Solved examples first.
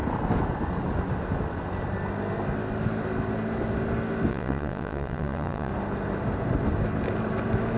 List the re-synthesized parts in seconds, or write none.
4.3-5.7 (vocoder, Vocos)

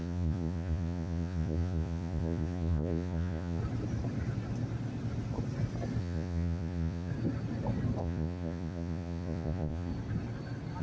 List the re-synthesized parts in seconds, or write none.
0.0-3.6 (vocoder, Vocos); 6.0-7.1; 8.0-9.9

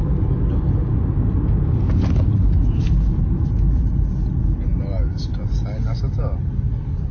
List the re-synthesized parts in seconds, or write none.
none

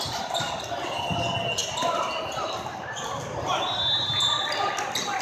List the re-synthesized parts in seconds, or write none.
none

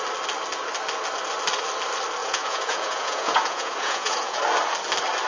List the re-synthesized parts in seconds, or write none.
2.2-4.4 (vocoder, Vocos)

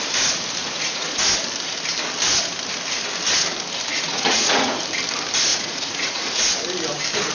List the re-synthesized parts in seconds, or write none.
0.6-1.2 (vocoder, Vocos); 3.9-4.8; 5.5-6.5